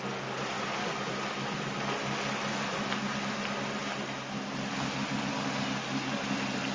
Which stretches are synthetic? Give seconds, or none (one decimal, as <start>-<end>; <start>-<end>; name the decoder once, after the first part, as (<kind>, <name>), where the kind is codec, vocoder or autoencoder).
none